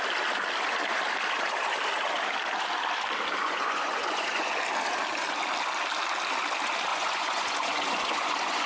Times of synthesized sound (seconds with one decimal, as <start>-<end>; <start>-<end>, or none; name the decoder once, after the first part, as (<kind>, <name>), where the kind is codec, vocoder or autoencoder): 3.4-4.5 (vocoder, Vocos); 6.9-8.7